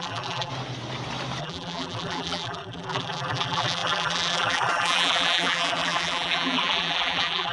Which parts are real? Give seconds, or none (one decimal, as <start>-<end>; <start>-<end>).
0.5-1.4

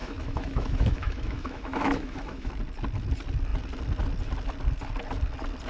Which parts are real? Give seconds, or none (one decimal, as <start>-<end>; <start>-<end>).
2.5-5.7

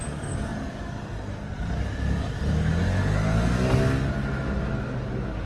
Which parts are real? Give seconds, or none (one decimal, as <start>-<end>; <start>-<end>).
0.0-5.5

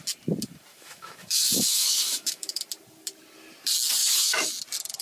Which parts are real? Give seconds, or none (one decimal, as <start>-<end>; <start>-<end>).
0.0-0.7; 2.6-4.0; 4.5-5.0

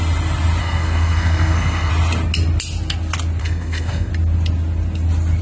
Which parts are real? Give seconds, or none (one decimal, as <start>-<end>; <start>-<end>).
0.0-0.6; 1.9-3.4; 4.1-5.4